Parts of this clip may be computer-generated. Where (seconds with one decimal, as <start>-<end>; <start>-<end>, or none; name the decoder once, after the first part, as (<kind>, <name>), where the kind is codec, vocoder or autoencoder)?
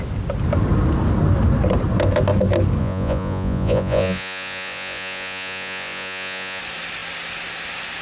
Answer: 2.8-6.6 (vocoder, Vocos)